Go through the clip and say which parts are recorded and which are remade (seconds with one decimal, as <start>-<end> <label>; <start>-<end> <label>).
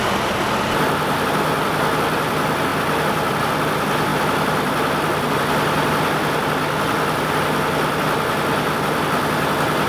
0.0-9.9 recorded